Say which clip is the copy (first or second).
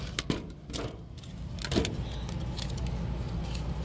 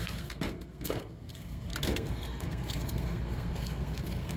second